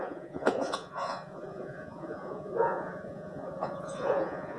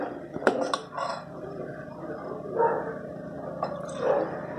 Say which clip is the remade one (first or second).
first